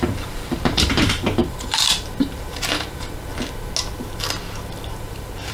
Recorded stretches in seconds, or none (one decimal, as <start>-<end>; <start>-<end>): 3.3-4.9